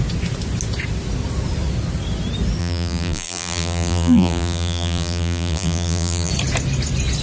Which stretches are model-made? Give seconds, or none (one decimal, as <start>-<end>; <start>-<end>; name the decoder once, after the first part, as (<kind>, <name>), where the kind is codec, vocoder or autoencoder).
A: 2.6-6.3 (vocoder, BigVGAN v2)